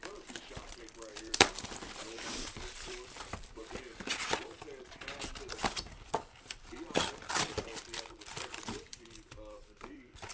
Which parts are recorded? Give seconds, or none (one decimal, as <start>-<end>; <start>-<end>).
3.6-4.9